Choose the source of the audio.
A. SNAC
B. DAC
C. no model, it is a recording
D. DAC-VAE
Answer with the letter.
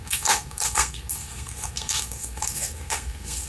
A